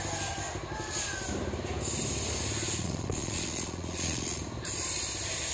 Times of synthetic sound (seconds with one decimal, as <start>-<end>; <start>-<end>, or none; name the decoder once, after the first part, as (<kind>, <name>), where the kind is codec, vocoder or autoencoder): 2.8-4.4 (vocoder, Vocos)